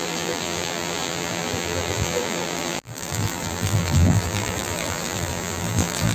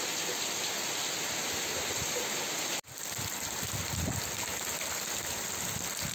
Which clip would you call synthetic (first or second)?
first